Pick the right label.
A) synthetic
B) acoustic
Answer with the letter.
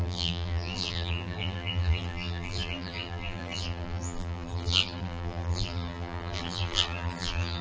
A